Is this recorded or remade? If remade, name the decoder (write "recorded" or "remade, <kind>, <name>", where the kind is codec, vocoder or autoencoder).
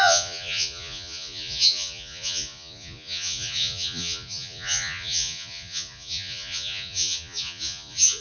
remade, vocoder, Vocos